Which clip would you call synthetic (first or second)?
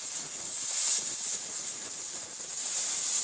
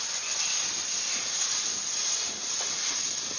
first